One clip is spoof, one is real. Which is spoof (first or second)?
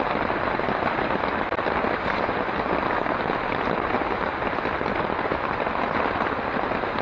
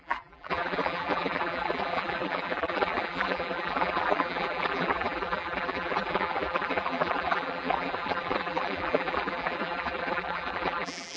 second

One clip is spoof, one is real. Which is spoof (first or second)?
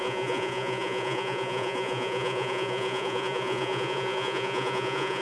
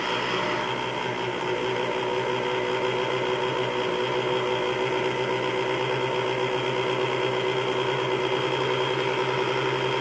first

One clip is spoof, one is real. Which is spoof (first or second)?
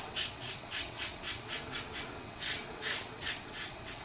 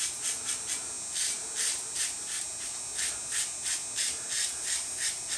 first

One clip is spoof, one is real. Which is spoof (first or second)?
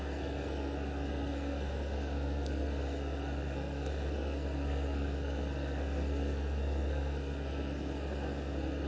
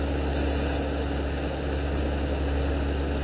first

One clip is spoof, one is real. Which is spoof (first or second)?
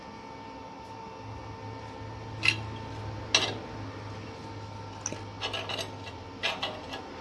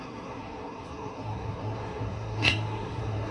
second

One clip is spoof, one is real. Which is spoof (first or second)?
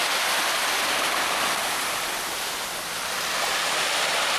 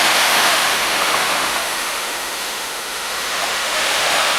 second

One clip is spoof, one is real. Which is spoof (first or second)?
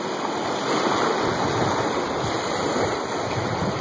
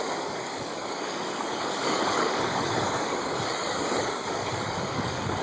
second